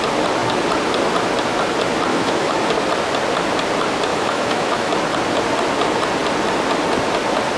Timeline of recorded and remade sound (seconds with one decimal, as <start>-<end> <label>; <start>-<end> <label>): 0.0-2.1 recorded; 2.1-2.7 remade; 2.7-4.1 recorded; 4.1-4.9 remade; 4.9-7.6 recorded